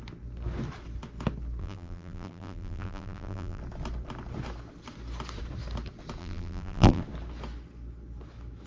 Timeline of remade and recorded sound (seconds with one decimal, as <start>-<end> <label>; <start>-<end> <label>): 0.0-1.6 recorded; 1.6-3.6 remade; 3.6-6.2 recorded; 6.2-7.0 remade; 7.0-8.7 recorded